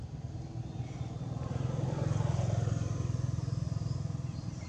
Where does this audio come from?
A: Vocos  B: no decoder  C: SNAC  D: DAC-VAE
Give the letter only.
B